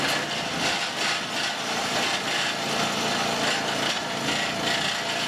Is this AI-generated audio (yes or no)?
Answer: no